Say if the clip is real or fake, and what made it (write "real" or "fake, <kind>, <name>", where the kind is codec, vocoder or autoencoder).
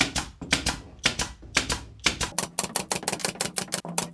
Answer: real